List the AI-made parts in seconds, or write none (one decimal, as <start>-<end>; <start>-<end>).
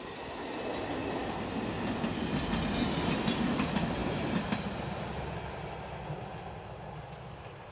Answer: none